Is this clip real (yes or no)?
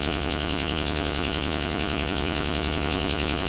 no